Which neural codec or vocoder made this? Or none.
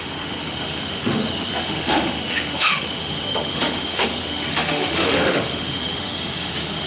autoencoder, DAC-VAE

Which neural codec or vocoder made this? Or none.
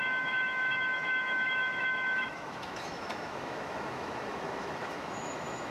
autoencoder, DAC-VAE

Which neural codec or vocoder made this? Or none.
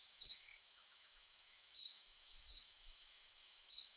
autoencoder, DAC-VAE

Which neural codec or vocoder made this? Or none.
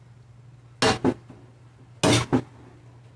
none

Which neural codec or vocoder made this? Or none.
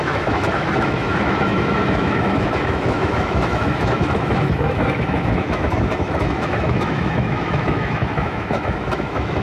autoencoder, DAC-VAE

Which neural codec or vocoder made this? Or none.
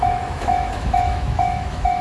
autoencoder, DAC-VAE